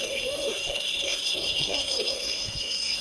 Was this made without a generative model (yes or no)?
no